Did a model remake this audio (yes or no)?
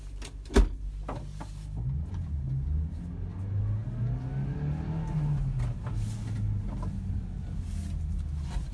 no